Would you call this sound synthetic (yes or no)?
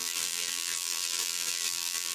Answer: yes